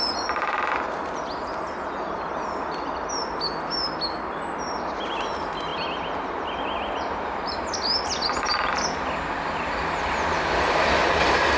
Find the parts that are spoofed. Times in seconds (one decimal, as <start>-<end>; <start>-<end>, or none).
none